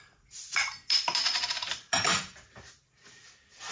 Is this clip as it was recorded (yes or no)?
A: yes